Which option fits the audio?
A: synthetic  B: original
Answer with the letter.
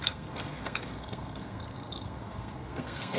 A